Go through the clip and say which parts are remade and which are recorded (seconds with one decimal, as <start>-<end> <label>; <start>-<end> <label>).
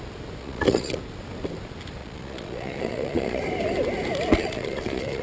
0.0-0.4 recorded; 0.4-1.0 remade; 1.0-2.0 recorded; 2.0-3.4 remade; 3.4-4.3 recorded; 4.3-5.2 remade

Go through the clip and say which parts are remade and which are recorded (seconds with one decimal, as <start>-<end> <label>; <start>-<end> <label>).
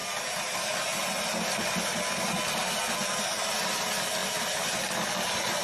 0.0-5.6 recorded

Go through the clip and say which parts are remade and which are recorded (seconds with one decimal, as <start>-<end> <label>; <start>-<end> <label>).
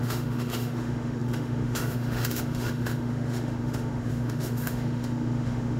0.0-5.8 remade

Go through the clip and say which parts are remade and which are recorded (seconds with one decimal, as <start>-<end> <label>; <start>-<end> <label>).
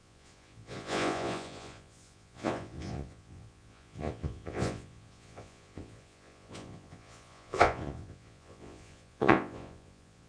0.0-10.3 remade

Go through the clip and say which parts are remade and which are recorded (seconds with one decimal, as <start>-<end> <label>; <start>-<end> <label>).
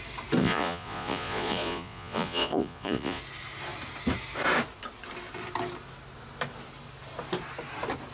0.0-0.4 recorded; 0.4-3.2 remade; 3.2-8.1 recorded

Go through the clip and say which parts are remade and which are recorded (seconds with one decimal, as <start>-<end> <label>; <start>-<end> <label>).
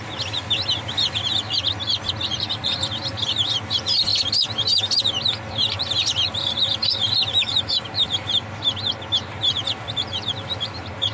0.0-2.3 recorded; 2.3-3.1 remade; 3.1-5.8 recorded; 5.8-8.6 remade; 8.6-11.1 recorded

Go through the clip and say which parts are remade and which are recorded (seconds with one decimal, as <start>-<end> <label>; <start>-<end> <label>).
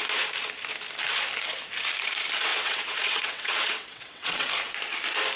0.0-2.5 recorded; 2.5-4.5 remade; 4.5-5.4 recorded